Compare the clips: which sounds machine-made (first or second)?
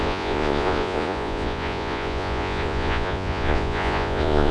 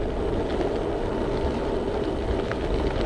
first